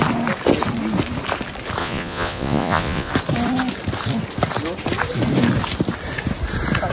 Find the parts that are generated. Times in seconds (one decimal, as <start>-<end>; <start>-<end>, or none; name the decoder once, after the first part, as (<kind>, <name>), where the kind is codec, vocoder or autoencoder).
1.8-3.1 (vocoder, Vocos)